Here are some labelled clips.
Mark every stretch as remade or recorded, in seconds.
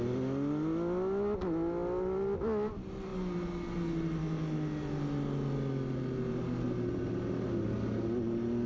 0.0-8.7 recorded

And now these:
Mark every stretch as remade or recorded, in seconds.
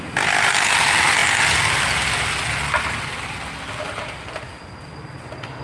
0.0-5.6 recorded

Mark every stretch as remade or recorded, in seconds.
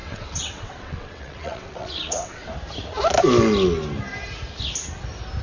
0.0-2.5 remade; 2.5-5.4 recorded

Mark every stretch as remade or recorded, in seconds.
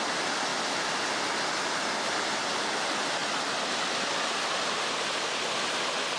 0.0-3.2 recorded; 3.2-5.4 remade; 5.4-6.2 recorded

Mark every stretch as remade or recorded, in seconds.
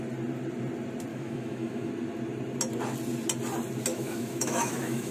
0.0-1.1 recorded; 1.1-1.9 remade; 1.9-3.9 recorded; 3.9-5.1 remade